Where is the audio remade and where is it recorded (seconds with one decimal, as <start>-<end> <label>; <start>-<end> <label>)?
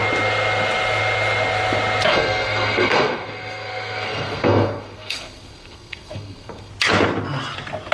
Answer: 0.0-2.1 recorded; 2.1-6.7 remade; 6.7-7.9 recorded